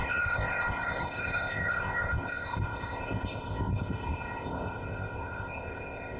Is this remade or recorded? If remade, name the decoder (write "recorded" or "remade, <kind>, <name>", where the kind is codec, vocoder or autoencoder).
remade, codec, ZipCodec